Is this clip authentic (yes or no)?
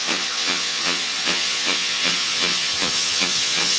no